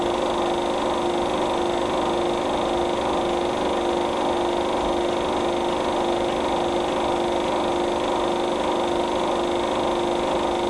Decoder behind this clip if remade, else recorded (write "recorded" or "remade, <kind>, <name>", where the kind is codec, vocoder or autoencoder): recorded